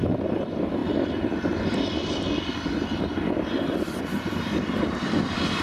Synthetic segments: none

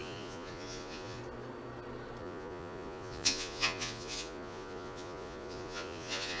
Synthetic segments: 0.0-1.2 (vocoder, Vocos); 2.2-6.4

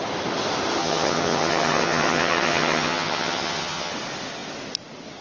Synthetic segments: 0.8-3.9 (vocoder, HiFi-GAN)

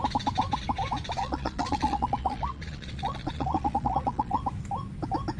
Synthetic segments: 1.2-4.4 (vocoder, Vocos)

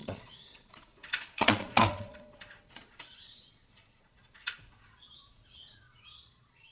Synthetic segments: 0.0-6.7 (vocoder, Vocos)

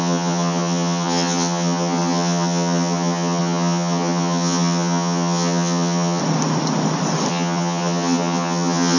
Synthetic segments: 0.0-6.2 (vocoder, HiFi-GAN); 7.3-9.0